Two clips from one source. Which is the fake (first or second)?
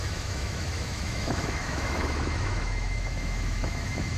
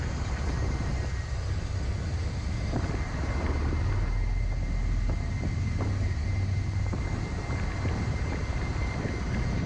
first